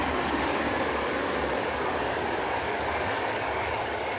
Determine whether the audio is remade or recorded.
remade